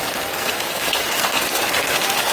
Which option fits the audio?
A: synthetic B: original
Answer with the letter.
A